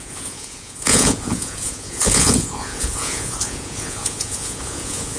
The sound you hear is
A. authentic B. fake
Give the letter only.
B